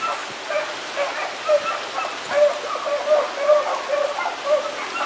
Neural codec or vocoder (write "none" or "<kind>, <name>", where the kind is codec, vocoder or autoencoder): none